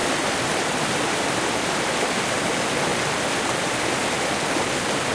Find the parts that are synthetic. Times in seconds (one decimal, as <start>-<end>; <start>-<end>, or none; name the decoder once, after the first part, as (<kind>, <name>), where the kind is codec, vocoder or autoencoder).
0.0-2.4 (vocoder, BigVGAN v2)